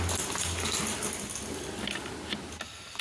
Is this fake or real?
real